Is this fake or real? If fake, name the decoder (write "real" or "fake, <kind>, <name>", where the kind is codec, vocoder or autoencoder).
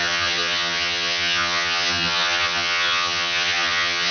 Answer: fake, vocoder, HiFi-GAN